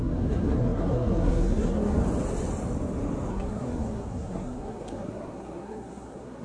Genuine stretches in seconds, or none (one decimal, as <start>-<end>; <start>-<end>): 2.0-3.3